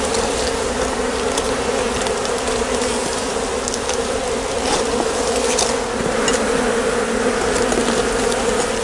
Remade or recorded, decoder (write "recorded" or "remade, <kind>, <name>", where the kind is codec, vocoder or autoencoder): recorded